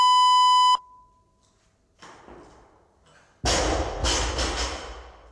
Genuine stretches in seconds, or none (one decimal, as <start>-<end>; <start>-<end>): 0.0-5.3